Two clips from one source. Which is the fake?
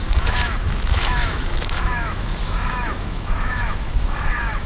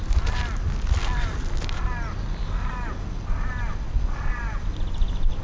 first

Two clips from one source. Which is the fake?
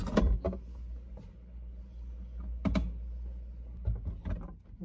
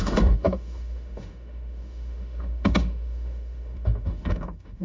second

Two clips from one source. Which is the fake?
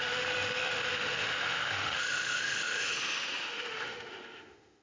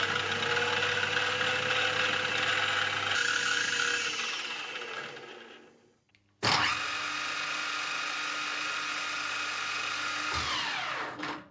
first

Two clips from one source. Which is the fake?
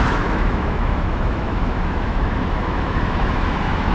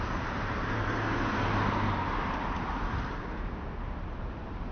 first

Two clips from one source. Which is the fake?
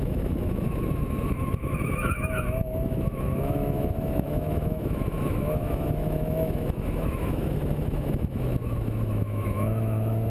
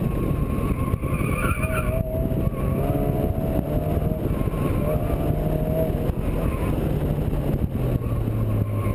first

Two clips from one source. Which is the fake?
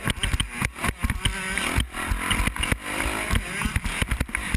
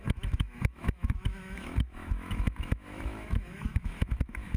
second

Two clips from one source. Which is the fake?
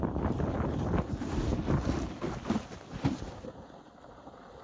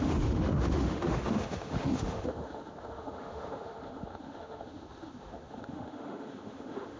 second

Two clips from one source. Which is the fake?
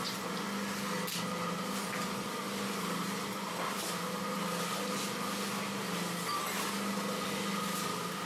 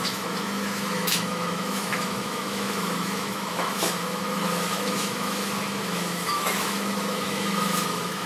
second